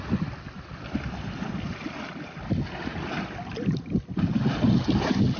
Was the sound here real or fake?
real